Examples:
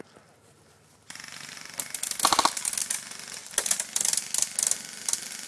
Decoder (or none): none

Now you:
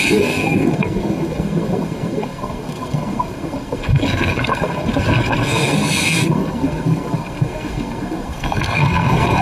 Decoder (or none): codec, SNAC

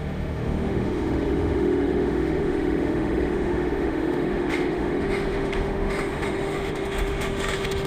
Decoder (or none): autoencoder, DAC-VAE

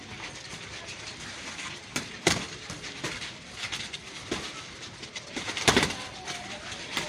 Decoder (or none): vocoder, BigVGAN v2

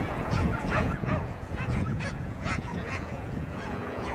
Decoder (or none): vocoder, Vocos